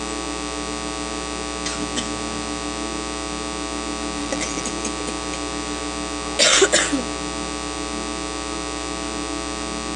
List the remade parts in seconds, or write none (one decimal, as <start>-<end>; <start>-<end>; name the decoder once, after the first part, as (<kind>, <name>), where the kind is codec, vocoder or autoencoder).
4.2-4.7 (vocoder, BigVGAN v2)